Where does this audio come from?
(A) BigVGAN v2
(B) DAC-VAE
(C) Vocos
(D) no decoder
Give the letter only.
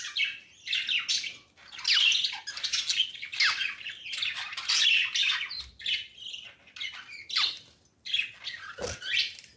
D